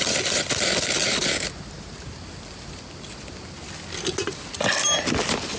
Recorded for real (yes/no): yes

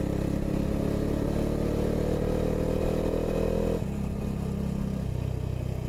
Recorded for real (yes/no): yes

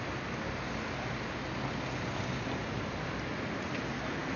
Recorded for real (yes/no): yes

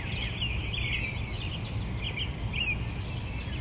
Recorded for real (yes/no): yes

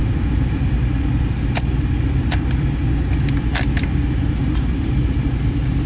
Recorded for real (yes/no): yes